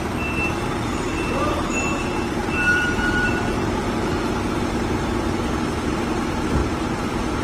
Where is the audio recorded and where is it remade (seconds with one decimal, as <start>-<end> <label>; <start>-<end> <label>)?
0.0-2.4 recorded; 2.4-4.2 remade; 4.2-6.6 recorded; 6.6-7.4 remade